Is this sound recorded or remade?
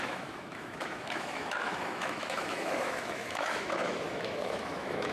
remade